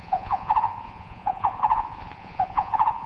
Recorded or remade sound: remade